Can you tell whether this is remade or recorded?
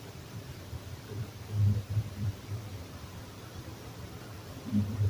remade